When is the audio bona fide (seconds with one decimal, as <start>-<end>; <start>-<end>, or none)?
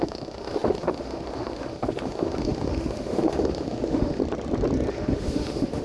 4.2-4.9